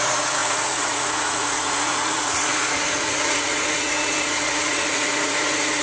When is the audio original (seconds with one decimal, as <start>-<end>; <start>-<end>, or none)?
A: none